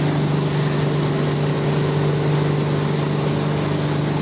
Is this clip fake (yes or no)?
no